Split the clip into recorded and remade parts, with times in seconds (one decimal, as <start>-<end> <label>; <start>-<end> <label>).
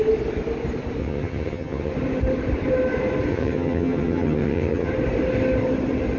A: 0.0-1.0 recorded; 1.0-1.9 remade; 1.9-3.3 recorded; 3.3-4.9 remade; 4.9-6.2 recorded